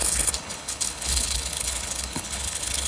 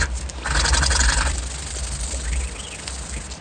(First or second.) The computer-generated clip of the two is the first